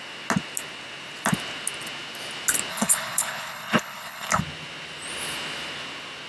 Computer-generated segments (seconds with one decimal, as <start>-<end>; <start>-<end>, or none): 2.7-4.4